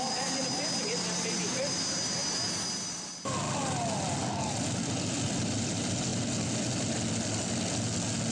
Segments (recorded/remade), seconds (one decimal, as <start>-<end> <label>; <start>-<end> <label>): 0.0-8.3 recorded